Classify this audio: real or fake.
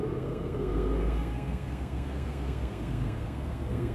fake